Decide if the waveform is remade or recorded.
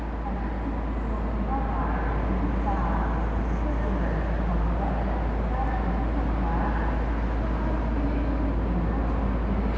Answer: recorded